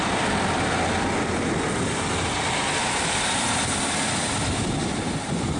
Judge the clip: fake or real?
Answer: real